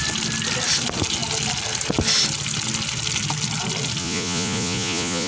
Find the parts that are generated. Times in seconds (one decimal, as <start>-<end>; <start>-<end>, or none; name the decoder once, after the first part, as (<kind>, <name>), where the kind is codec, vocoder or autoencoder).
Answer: 4.0-5.3 (vocoder, Vocos)